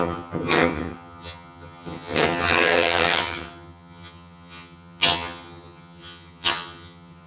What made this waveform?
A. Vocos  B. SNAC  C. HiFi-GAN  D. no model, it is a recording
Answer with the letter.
C